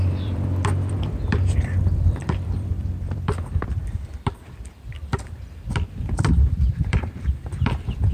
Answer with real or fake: fake